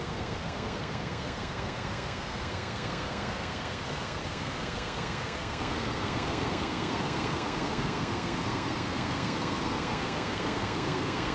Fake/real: fake